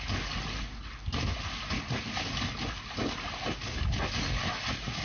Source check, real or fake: real